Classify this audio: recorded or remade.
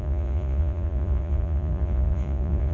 remade